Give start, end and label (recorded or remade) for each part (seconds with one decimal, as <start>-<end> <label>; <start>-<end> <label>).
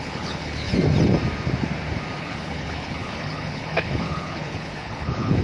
0.0-0.7 remade; 0.7-2.2 recorded; 2.2-5.4 remade